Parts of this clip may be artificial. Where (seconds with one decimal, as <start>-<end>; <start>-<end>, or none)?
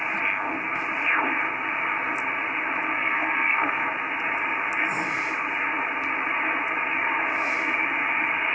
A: 3.0-3.8